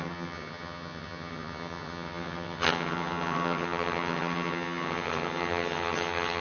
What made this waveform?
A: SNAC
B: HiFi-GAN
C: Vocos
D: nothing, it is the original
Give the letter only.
B